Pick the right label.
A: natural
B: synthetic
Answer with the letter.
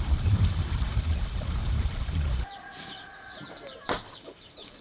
B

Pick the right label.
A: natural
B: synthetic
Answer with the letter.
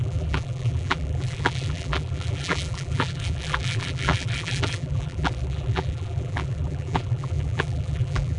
B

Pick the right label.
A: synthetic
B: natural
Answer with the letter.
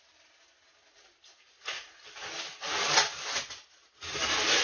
B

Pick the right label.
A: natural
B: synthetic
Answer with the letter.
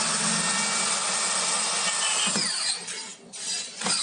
A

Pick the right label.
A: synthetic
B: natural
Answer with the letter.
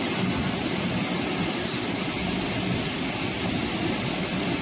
B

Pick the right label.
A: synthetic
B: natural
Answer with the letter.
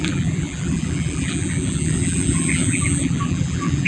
A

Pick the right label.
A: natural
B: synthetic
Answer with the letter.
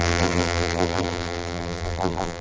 B